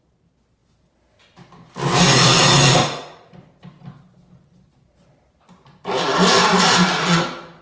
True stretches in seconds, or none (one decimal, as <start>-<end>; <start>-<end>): 0.0-2.8; 3.4-7.6